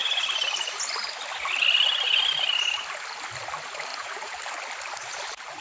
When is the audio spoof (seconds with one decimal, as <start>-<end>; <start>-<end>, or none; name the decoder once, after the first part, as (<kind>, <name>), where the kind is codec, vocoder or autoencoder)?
3.9-4.4 (vocoder, Vocos)